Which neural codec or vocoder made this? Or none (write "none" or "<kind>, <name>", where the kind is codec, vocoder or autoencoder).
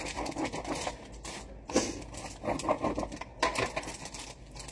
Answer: none